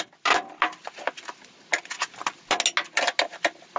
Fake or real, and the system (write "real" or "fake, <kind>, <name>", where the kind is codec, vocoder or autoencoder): real